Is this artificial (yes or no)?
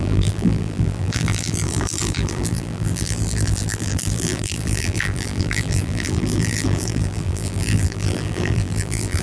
yes